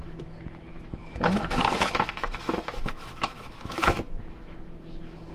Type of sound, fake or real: fake